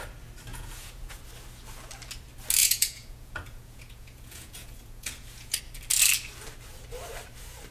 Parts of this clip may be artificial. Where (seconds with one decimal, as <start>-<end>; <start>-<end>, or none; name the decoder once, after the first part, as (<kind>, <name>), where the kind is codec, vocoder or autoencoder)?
0.5-1.2 (vocoder, Vocos); 2.6-5.6

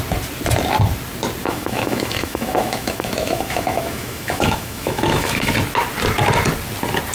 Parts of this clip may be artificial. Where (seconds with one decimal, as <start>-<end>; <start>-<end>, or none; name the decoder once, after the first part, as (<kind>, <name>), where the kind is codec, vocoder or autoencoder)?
1.4-5.5 (autoencoder, DAC-VAE)

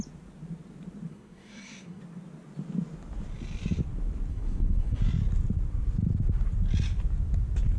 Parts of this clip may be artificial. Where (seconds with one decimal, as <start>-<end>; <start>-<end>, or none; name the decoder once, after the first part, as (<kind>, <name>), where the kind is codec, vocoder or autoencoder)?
1.1-2.0 (codec, SNAC); 4.3-5.0

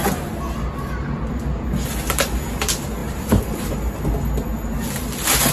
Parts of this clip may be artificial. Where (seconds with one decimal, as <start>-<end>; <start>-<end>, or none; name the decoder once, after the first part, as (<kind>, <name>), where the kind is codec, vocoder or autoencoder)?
3.0-4.0 (vocoder, BigVGAN v2)

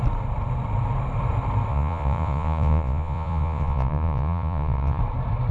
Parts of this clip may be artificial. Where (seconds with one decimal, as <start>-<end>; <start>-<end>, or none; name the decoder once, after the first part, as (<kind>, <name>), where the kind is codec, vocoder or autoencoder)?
1.7-5.0 (vocoder, Vocos)

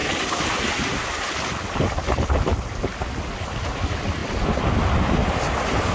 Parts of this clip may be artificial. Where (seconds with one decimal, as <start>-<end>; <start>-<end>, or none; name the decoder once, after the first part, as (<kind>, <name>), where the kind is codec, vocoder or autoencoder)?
none

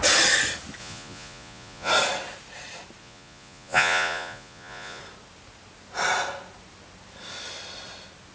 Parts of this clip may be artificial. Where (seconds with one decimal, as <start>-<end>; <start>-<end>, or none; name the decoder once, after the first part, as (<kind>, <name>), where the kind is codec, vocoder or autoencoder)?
0.8-1.9 (vocoder, Vocos); 3.0-5.0

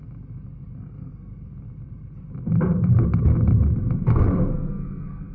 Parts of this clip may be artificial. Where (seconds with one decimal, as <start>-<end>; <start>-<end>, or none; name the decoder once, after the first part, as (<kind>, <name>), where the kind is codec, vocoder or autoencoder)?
0.8-1.3 (codec, SNAC); 4.5-5.3